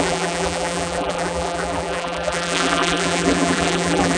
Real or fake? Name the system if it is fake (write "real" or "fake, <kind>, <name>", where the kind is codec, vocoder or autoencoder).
fake, vocoder, BigVGAN v2